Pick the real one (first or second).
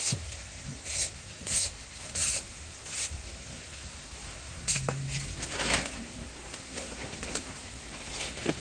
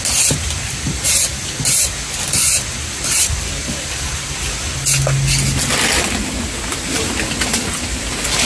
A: second